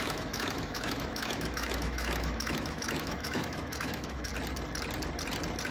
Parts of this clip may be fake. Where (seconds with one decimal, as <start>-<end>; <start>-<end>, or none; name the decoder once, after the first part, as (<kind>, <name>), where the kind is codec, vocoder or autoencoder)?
0.0-4.3 (autoencoder, DAC-VAE)